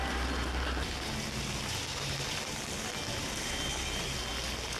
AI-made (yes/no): no